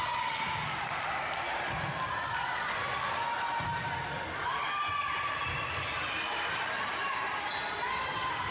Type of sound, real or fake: real